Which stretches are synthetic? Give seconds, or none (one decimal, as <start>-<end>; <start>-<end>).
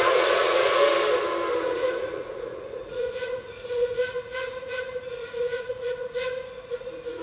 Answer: 0.0-0.9; 1.6-7.2